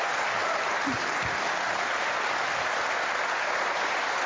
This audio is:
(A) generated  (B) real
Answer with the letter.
B